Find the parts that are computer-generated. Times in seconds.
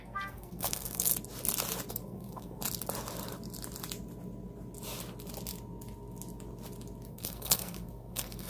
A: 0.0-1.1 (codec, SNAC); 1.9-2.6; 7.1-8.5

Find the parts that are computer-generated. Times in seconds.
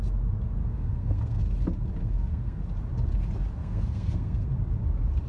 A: 0.6-1.4 (codec, SNAC); 2.0-2.6; 3.6-4.5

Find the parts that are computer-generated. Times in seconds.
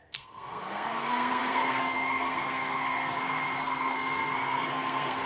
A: 0.0-5.3 (codec, SNAC)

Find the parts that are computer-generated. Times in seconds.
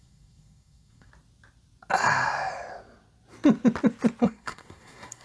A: 0.0-1.1 (codec, SNAC); 4.2-5.2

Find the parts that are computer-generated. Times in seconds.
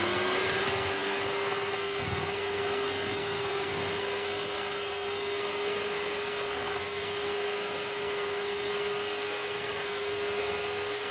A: 0.0-11.1 (codec, SNAC)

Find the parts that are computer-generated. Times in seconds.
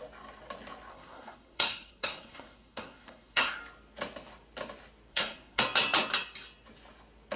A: 0.9-3.6 (codec, SNAC); 5.1-5.6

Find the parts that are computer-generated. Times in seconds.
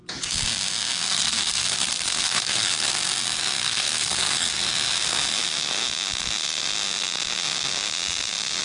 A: 1.1-2.9 (codec, SNAC); 3.6-4.5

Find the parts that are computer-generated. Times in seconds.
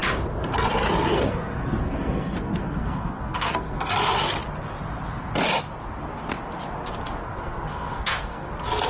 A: 1.1-3.9 (codec, SNAC); 7.2-8.5